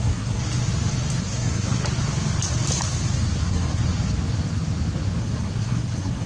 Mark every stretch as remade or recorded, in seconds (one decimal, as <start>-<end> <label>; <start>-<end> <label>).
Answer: 0.0-0.4 remade; 0.4-1.2 recorded; 1.2-1.8 remade; 1.8-3.4 recorded; 3.4-3.8 remade; 3.8-5.2 recorded; 5.2-6.3 remade